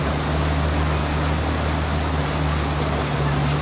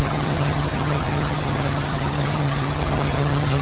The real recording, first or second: first